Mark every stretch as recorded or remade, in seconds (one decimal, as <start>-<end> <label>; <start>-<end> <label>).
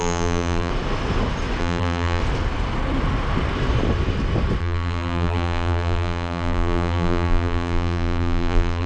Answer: 0.0-0.7 remade; 0.7-1.6 recorded; 1.6-2.2 remade; 2.2-4.6 recorded; 4.6-8.9 remade